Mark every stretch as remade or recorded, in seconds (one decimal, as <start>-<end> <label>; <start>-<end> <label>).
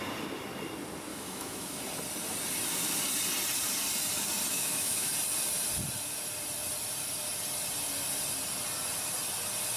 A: 0.0-1.1 recorded; 1.1-1.8 remade; 1.8-4.5 recorded; 4.5-5.1 remade; 5.1-9.8 recorded